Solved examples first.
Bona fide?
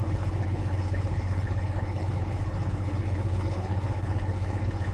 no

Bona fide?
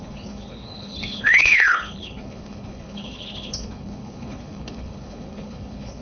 no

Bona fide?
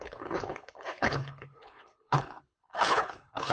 no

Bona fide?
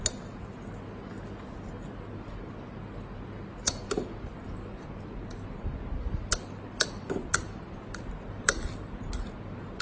yes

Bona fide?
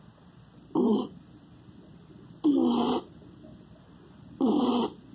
yes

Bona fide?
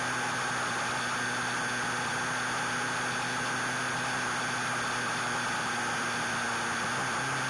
yes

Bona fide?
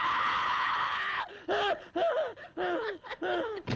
no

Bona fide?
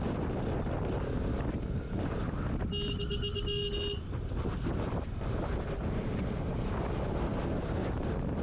yes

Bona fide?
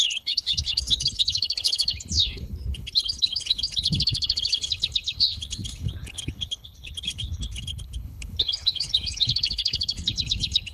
no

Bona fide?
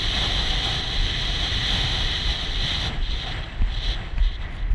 yes